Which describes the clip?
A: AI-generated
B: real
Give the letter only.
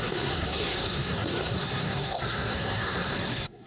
A